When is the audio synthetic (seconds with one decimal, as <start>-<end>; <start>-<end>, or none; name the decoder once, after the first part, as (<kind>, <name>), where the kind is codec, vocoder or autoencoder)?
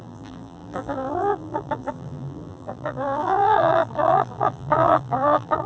0.0-5.7 (vocoder, BigVGAN v2)